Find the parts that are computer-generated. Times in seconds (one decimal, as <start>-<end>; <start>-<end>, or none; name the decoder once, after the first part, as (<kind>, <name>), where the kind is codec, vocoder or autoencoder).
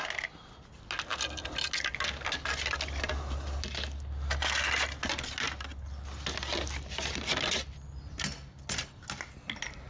none